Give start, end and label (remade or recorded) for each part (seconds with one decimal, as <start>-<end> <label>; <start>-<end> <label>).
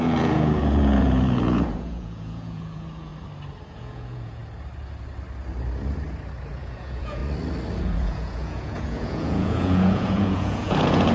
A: 0.0-3.1 remade; 3.1-3.7 recorded; 3.7-4.4 remade; 4.4-6.5 recorded; 6.5-7.2 remade; 7.2-7.8 recorded; 7.8-11.1 remade